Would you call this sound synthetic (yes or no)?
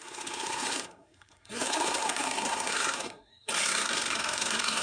yes